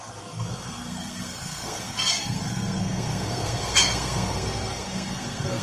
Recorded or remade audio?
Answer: remade